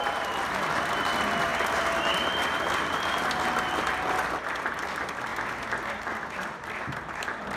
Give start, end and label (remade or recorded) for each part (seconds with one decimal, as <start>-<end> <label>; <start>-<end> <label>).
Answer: 0.0-7.6 recorded